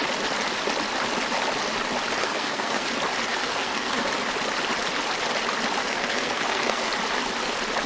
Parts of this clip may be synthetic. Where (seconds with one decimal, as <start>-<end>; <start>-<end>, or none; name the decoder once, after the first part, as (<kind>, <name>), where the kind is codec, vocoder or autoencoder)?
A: 2.2-2.9 (codec, SNAC); 3.3-4.1; 5.8-6.9